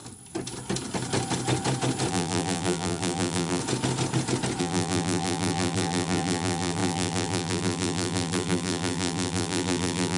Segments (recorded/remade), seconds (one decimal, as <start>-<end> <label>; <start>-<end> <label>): 0.0-2.1 recorded; 2.1-3.6 remade; 3.6-4.6 recorded; 4.6-10.2 remade